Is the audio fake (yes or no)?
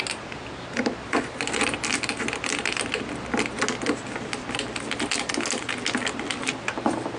no